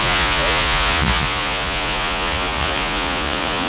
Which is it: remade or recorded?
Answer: remade